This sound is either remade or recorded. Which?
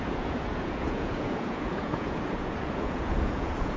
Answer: remade